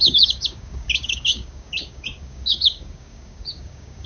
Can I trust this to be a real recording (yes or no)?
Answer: no